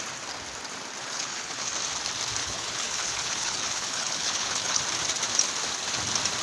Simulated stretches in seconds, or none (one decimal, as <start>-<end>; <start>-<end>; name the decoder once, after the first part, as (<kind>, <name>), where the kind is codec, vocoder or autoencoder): 1.0-1.7 (codec, HILCodec); 2.4-4.8